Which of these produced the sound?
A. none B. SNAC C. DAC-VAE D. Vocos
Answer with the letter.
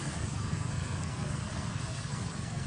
B